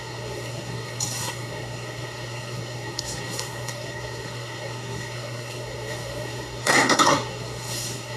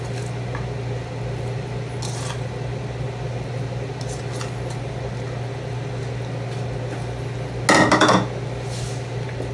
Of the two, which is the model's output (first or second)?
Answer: first